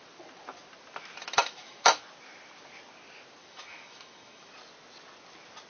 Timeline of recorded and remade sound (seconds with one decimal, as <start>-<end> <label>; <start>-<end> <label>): 0.0-1.4 recorded; 1.4-2.0 remade; 2.0-3.4 recorded; 3.4-4.5 remade; 4.5-5.7 recorded